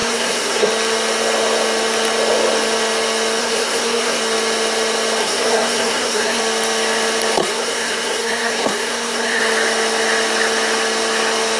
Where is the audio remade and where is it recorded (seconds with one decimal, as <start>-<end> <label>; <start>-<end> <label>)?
0.0-0.7 remade; 0.7-3.4 recorded; 3.4-4.2 remade; 4.2-5.2 recorded; 5.2-6.4 remade; 6.4-7.4 recorded; 7.4-9.4 remade; 9.4-11.6 recorded